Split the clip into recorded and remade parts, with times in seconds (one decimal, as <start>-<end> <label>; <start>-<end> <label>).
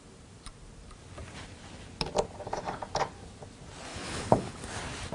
0.0-3.9 recorded; 3.9-4.6 remade; 4.6-5.1 recorded